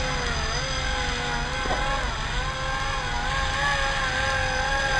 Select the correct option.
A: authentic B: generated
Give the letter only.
A